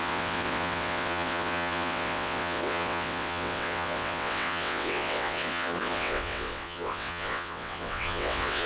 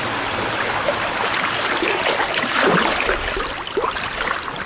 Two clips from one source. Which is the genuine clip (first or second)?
second